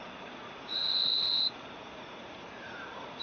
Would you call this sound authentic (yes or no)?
no